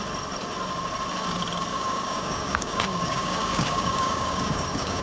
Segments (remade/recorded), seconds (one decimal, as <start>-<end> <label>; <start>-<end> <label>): 0.0-1.7 recorded; 1.7-5.0 remade